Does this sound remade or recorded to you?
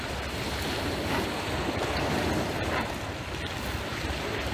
recorded